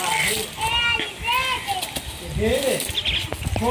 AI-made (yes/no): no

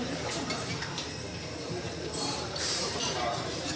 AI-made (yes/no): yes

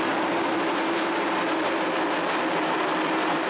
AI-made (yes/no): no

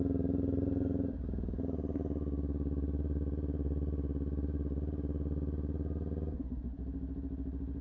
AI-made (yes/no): no